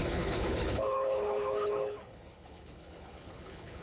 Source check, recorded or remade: remade